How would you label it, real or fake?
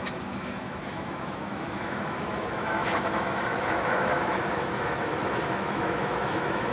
fake